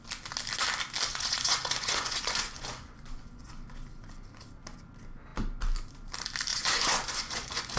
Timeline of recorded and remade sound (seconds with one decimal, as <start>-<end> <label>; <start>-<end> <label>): 0.0-1.1 recorded; 1.1-3.5 remade; 3.5-6.5 recorded; 6.5-7.8 remade